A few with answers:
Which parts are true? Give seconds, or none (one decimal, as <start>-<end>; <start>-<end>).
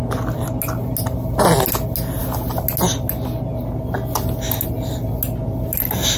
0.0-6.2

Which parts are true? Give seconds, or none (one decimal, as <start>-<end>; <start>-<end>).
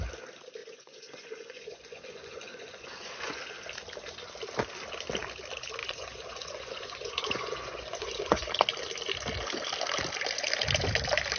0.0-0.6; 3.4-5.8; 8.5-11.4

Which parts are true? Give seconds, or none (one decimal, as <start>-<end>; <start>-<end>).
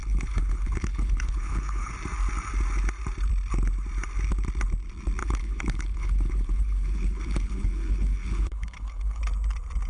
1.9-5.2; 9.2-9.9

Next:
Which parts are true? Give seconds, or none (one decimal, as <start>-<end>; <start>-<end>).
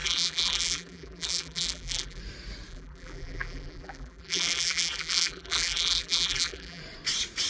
2.2-2.7; 6.8-7.5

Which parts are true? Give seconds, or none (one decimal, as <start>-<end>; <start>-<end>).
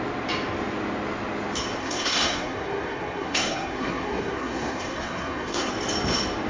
0.0-1.8; 5.7-6.5